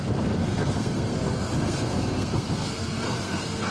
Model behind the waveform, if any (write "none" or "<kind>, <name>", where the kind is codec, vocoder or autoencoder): codec, SNAC